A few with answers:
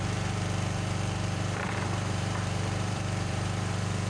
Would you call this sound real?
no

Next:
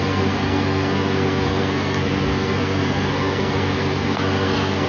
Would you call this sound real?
no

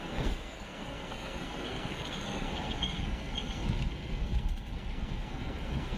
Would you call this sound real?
no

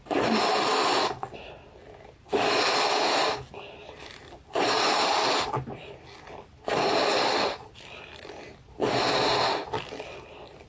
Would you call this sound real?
yes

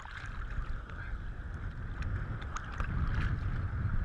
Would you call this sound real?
yes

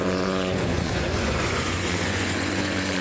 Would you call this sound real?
no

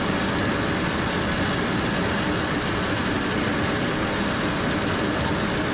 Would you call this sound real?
yes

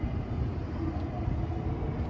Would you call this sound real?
yes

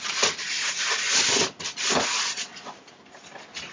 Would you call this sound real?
yes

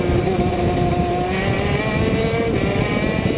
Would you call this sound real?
yes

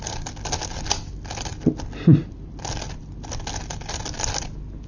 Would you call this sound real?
yes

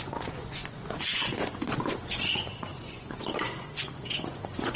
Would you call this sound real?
no